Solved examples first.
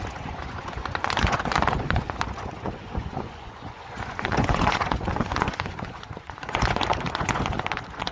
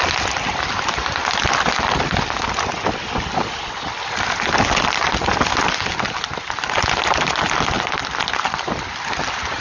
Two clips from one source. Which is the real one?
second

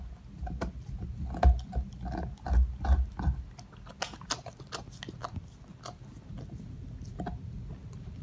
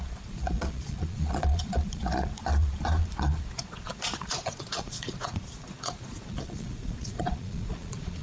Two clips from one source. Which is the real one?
first